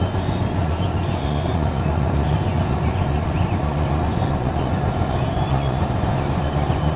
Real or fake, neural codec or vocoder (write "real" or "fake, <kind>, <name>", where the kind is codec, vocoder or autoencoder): fake, vocoder, Vocos